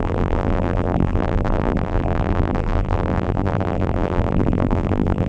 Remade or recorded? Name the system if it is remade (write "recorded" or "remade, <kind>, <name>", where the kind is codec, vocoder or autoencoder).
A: remade, vocoder, BigVGAN v2